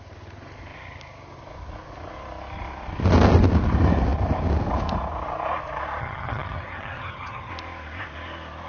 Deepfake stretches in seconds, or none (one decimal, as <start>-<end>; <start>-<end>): 6.0-7.5